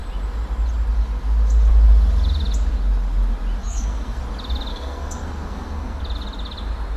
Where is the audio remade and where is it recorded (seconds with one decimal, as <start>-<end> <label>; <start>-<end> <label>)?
0.0-3.6 recorded; 3.6-4.2 remade; 4.2-4.7 recorded; 4.7-6.0 remade; 6.0-7.0 recorded